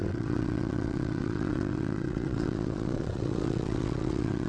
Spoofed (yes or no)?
yes